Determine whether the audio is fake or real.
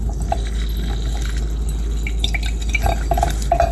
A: real